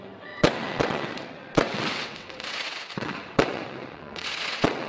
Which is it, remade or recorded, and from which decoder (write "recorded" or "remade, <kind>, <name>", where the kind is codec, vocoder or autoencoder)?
remade, vocoder, WaveNeXt